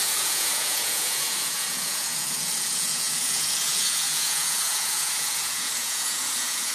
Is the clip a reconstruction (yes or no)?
yes